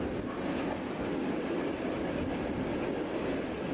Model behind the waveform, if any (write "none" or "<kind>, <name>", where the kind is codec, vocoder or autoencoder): none